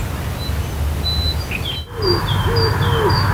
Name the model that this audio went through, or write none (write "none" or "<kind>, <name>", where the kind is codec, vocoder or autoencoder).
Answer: none